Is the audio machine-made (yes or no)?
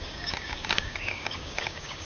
yes